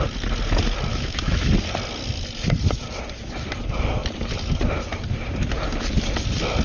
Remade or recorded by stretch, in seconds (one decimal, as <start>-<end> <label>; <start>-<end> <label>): 0.0-0.9 recorded; 0.9-1.5 remade; 1.5-6.6 recorded